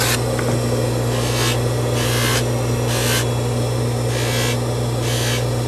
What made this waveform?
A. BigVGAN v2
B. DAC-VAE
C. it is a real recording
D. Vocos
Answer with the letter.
C